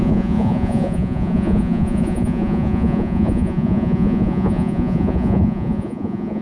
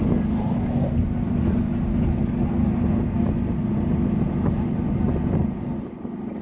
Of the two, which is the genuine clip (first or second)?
second